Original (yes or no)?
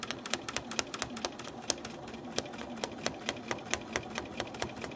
yes